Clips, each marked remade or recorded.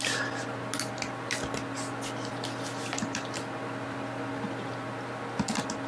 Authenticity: recorded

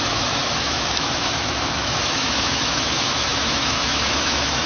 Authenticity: remade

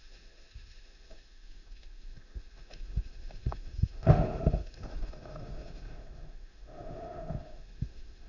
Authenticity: remade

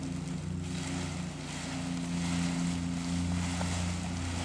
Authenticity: recorded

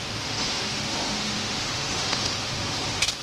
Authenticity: remade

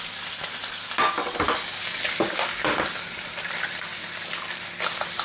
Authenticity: recorded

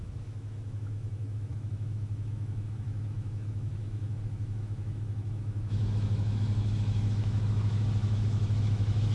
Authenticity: remade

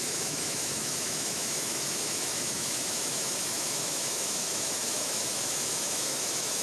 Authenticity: remade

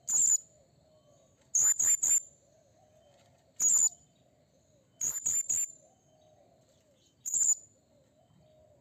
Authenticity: recorded